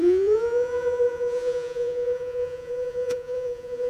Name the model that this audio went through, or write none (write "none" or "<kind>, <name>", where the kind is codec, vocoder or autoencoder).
vocoder, Vocos